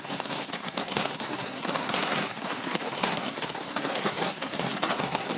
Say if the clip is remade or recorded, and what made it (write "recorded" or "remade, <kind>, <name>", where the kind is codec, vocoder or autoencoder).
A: remade, codec, SNAC